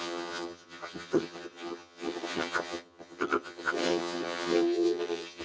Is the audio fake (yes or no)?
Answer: yes